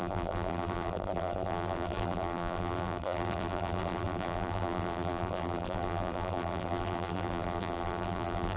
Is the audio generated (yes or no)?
yes